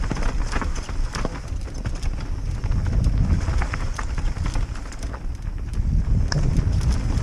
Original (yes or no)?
yes